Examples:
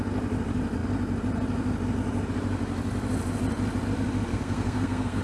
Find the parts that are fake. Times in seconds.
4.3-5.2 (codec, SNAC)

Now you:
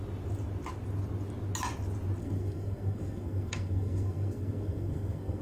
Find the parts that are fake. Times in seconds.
2.2-5.4 (codec, SNAC)

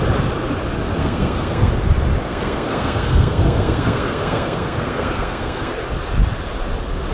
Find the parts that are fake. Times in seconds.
1.0-1.7 (codec, SNAC); 2.2-5.8

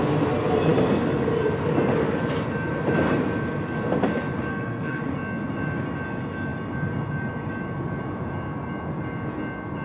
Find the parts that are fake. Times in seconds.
4.5-5.0 (codec, SNAC)

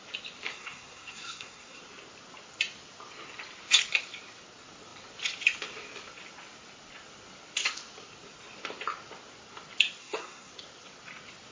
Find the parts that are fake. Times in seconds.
0.5-1.8 (codec, SNAC); 10.0-10.5

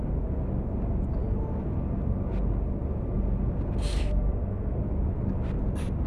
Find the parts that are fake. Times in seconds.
3.9-4.8 (codec, SNAC)